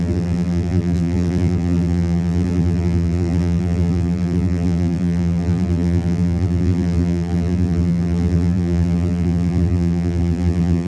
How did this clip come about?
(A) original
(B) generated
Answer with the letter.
B